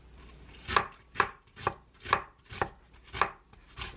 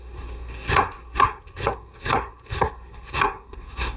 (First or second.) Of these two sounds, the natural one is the first